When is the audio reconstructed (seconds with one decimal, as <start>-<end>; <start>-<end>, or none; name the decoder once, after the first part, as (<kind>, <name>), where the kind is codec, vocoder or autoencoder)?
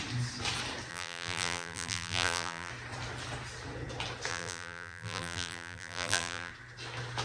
0.9-2.7 (vocoder, BigVGAN v2); 4.3-6.5